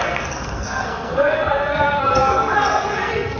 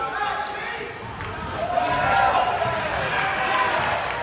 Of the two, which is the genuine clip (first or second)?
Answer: second